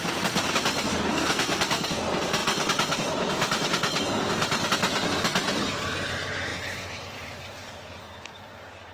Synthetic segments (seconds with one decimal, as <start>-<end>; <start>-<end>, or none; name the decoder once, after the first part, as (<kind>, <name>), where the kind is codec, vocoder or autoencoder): 1.1-2.0 (codec, SNAC)